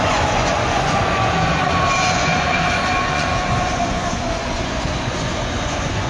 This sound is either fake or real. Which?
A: fake